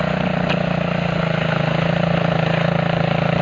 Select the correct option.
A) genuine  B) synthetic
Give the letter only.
A